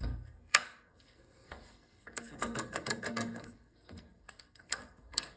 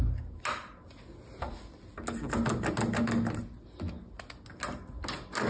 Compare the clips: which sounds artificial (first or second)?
first